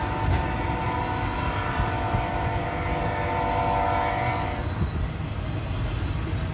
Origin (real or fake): real